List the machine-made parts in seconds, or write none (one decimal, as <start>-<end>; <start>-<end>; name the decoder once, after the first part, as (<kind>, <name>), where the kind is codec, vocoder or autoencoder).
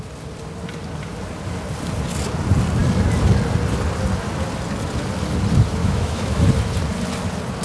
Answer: 5.8-6.5 (autoencoder, DAC-VAE)